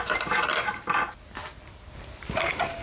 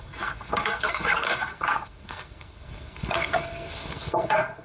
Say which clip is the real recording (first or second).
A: first